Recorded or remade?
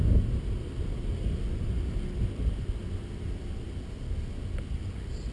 recorded